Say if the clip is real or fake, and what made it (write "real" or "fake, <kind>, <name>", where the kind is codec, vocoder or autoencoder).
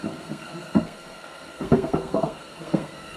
fake, codec, SNAC